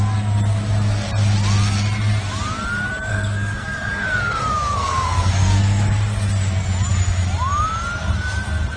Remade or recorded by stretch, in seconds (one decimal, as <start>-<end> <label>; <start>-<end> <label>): 0.0-3.1 recorded; 3.1-5.9 remade; 5.9-8.8 recorded